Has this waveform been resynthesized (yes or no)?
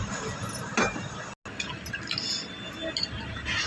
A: no